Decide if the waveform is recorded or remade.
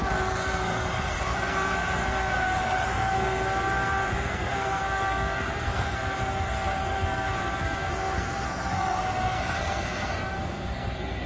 remade